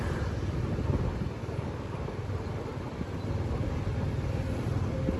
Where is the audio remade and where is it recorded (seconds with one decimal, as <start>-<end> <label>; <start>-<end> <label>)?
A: 0.0-1.4 recorded; 1.4-2.1 remade; 2.1-5.2 recorded